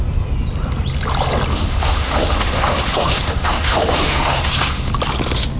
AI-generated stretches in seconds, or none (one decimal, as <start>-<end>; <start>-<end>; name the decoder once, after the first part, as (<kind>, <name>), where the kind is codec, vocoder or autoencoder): 1.5-4.9 (autoencoder, DAC-VAE)